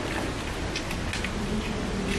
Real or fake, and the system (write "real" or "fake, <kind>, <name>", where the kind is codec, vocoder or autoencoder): real